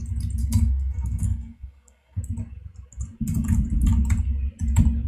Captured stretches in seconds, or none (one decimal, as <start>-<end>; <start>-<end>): 0.0-0.4; 2.2-5.1